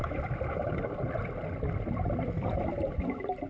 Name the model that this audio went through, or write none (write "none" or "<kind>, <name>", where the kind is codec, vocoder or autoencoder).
vocoder, BigVGAN v2